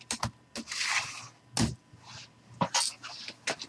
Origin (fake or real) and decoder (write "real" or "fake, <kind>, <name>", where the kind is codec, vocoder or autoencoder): real